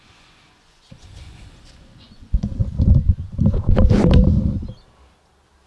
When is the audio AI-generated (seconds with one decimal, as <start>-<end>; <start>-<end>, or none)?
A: 0.0-2.6